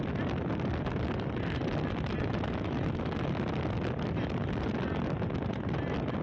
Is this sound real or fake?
real